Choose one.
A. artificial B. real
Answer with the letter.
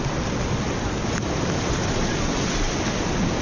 B